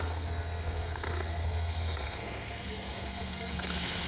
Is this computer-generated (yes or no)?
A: yes